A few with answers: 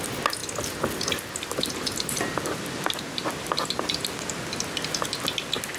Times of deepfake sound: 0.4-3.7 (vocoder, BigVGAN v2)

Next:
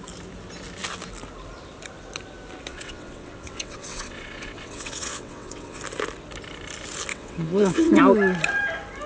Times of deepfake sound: 2.7-5.8 (vocoder, WaveNeXt); 7.1-8.0

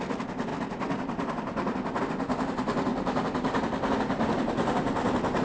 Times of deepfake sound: 2.9-3.9 (vocoder, BigVGAN v2)

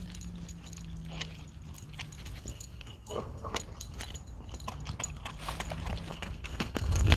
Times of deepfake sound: 2.5-3.6 (codec, SNAC); 6.1-7.2

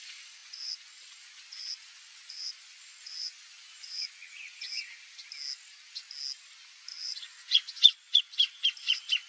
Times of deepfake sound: 0.4-4.8 (vocoder, Vocos); 6.9-8.2

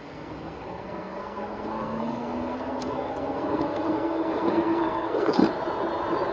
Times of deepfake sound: 0.0-5.4 (codec, SNAC)